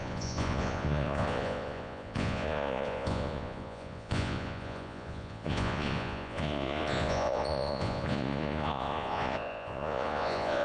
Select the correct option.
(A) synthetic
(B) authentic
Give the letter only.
A